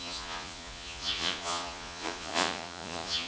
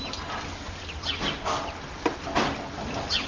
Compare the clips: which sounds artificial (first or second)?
first